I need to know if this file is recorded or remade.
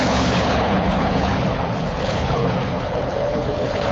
remade